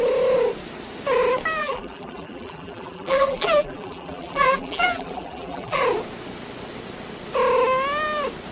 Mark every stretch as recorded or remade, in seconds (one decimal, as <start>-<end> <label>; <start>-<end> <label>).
0.0-1.6 recorded; 1.6-5.8 remade; 5.8-8.5 recorded

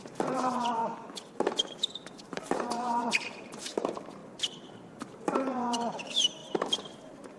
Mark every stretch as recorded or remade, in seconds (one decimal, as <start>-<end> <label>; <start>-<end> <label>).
0.0-0.8 remade; 0.8-1.3 recorded; 1.3-4.2 remade; 4.2-5.0 recorded; 5.0-7.4 remade

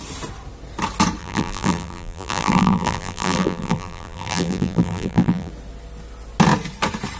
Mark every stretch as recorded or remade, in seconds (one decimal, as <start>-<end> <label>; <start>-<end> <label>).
0.0-1.2 recorded; 1.2-5.5 remade; 5.5-7.2 recorded

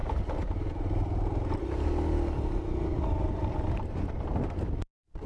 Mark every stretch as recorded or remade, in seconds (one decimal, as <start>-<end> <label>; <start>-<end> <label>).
0.0-5.3 recorded

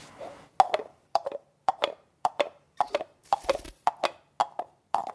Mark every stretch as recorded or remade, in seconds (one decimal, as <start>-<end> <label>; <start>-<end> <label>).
0.0-0.8 recorded; 0.8-3.9 remade; 3.9-4.4 recorded; 4.4-5.1 remade